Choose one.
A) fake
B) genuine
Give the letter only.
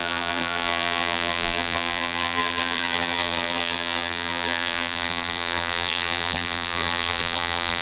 A